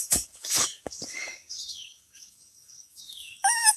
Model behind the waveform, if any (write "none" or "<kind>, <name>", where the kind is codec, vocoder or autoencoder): codec, DAC